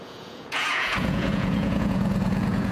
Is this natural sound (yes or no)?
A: no